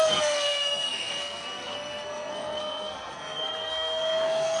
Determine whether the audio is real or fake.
fake